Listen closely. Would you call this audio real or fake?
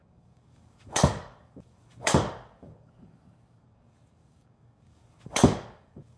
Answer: fake